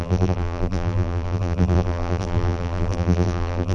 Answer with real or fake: fake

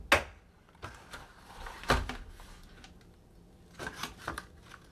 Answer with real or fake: real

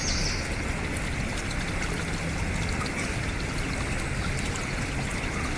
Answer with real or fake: real